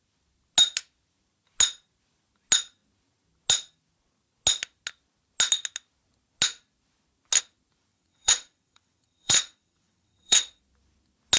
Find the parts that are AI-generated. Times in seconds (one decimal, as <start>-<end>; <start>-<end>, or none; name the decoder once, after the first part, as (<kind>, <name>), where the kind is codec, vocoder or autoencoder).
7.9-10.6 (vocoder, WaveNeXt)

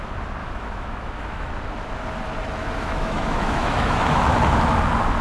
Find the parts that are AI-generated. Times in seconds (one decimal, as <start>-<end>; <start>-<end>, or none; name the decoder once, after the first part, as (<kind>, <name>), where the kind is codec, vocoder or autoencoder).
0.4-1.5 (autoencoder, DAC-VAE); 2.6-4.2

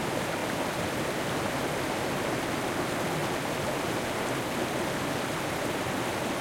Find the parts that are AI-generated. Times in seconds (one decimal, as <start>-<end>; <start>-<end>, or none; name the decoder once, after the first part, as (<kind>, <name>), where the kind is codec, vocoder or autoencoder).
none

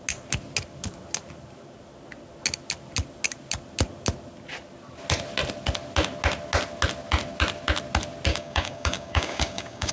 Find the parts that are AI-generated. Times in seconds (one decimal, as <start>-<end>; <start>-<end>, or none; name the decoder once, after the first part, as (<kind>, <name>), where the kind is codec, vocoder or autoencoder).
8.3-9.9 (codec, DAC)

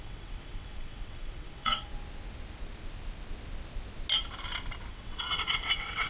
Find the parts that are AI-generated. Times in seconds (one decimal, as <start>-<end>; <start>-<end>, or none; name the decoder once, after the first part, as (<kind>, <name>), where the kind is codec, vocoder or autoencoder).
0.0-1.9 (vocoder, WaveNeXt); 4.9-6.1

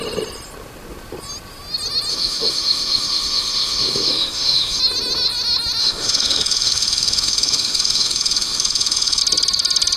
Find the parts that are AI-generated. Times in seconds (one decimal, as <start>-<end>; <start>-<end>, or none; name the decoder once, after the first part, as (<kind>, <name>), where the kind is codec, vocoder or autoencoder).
2.1-4.8 (autoencoder, DAC-VAE); 5.8-9.2

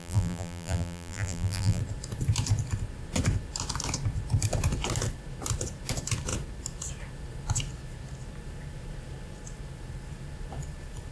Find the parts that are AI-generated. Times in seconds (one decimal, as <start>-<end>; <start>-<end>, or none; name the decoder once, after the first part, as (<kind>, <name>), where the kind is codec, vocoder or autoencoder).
0.0-1.8 (vocoder, BigVGAN v2)